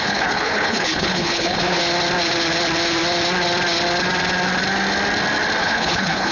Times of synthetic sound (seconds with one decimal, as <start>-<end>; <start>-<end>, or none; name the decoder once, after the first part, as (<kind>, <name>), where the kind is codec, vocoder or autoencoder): 0.0-1.8 (codec, HILCodec); 5.6-6.3